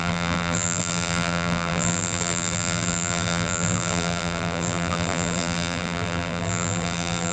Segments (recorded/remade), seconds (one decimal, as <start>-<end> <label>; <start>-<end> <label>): 0.0-7.3 remade